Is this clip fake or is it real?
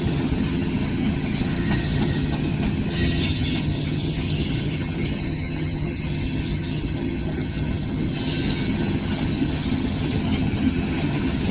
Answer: fake